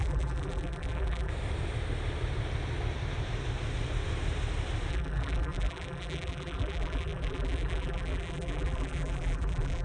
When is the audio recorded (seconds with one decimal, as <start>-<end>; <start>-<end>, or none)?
1.3-4.9